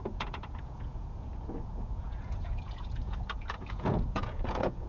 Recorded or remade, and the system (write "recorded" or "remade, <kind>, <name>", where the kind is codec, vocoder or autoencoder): remade, vocoder, Vocos